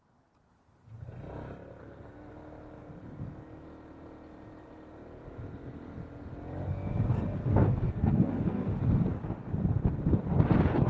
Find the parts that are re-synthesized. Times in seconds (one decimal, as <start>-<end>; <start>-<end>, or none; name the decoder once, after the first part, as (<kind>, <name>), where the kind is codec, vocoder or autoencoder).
1.8-2.3 (codec, SNAC); 7.4-8.8